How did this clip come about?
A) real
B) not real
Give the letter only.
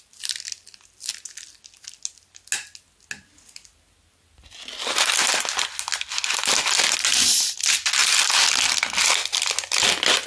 A